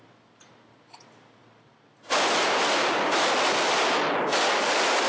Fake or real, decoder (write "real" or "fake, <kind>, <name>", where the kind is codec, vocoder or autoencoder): real